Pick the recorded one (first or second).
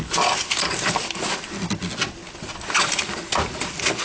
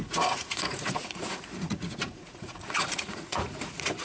first